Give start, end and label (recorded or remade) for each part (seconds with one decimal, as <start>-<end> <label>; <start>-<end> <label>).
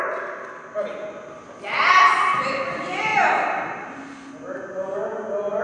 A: 0.0-5.6 recorded